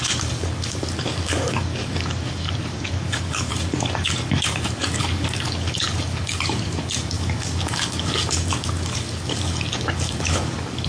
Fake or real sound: fake